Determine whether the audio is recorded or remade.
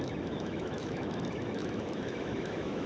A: remade